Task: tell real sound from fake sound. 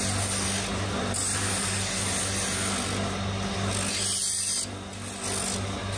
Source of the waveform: real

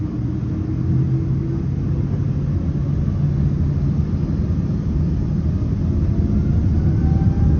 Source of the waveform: real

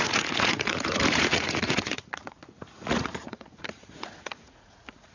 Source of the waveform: fake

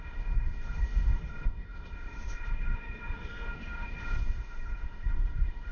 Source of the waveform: fake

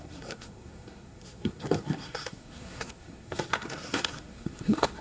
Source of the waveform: fake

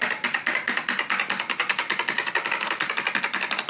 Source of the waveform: real